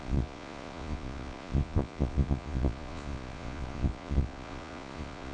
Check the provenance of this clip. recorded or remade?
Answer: remade